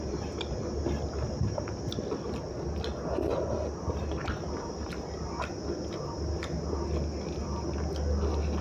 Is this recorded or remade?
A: recorded